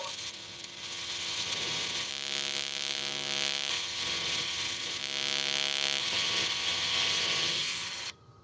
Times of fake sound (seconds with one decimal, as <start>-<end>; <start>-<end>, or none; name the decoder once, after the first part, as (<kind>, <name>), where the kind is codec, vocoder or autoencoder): 0.0-2.1 (vocoder, HiFi-GAN); 3.7-5.0; 6.0-8.4